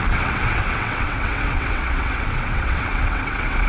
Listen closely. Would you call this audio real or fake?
fake